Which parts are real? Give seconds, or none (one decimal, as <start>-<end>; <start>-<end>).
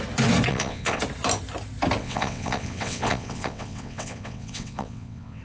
0.0-0.5; 1.0-2.0